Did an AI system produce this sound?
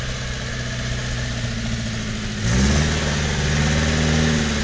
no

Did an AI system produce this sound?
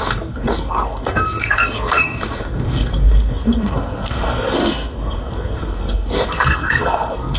yes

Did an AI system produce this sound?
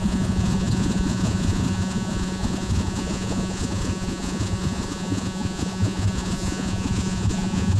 yes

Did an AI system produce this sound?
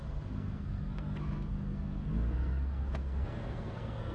yes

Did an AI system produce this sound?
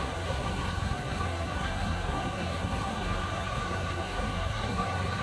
yes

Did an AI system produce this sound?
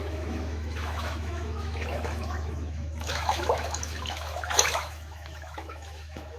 yes